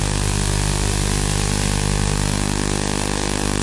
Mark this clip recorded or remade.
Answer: recorded